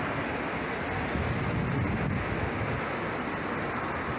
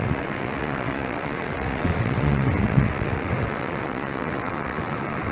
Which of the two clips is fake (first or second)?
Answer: second